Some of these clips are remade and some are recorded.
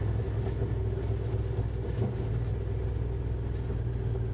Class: recorded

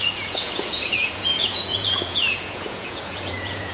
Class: remade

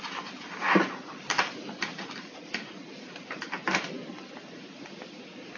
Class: recorded